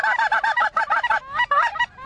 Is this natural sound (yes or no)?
yes